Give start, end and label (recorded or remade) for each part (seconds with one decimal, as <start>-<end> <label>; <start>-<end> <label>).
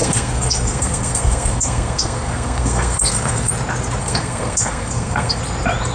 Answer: 0.0-3.5 remade; 3.5-4.0 recorded; 4.0-5.4 remade; 5.4-5.9 recorded